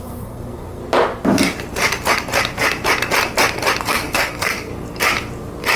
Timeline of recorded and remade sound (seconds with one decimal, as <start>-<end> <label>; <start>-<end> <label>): 0.0-0.8 remade; 0.8-3.8 recorded; 3.8-4.7 remade; 4.7-5.8 recorded

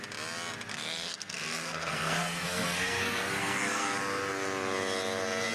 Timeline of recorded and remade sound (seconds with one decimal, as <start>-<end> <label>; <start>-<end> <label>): 0.0-0.7 recorded; 0.7-4.0 remade; 4.0-5.5 recorded

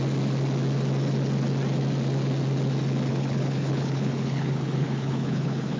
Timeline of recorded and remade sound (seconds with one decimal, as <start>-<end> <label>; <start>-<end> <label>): 0.0-3.1 recorded; 3.1-5.8 remade

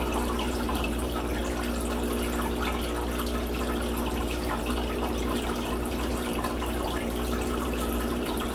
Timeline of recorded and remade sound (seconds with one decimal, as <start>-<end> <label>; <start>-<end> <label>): 0.0-1.4 remade; 1.4-4.2 recorded; 4.2-8.5 remade

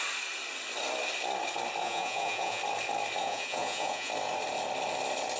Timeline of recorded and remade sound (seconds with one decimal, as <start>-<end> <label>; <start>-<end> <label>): 0.0-1.8 recorded; 1.8-2.6 remade; 2.6-3.2 recorded; 3.2-4.1 remade; 4.1-5.4 recorded